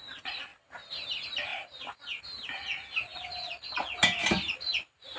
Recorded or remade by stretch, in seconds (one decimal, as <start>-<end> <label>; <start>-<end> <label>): 0.0-3.1 recorded; 3.1-5.2 remade